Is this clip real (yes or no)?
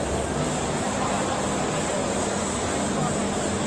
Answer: yes